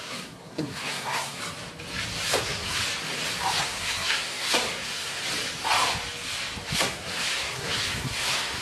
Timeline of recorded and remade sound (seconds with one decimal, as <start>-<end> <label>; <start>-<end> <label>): 0.0-1.4 remade; 1.4-2.4 recorded; 2.4-2.8 remade; 2.8-3.6 recorded; 3.6-5.2 remade; 5.2-6.7 recorded; 6.7-8.6 remade